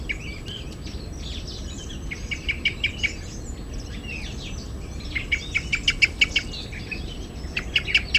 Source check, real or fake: real